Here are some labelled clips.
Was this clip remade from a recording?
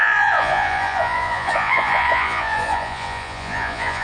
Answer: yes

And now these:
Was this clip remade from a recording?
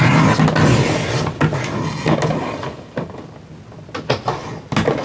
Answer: no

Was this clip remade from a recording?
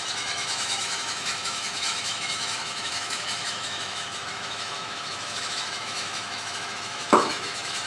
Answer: yes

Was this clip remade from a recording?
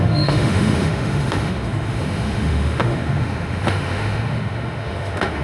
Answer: yes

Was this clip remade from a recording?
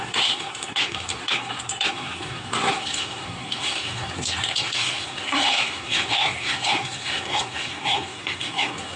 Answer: yes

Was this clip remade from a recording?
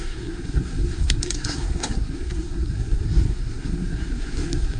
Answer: yes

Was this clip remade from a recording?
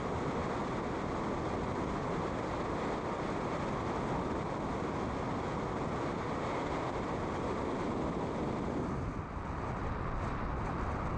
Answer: no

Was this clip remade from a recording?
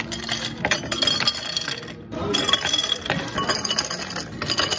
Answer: no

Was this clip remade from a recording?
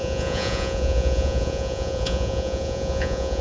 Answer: yes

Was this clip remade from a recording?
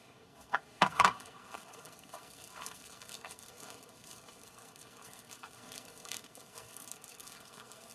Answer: yes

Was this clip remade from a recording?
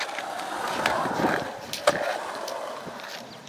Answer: yes